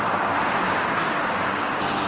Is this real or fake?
real